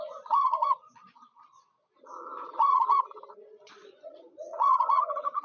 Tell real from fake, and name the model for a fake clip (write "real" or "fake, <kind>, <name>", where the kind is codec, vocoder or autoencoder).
fake, vocoder, Vocos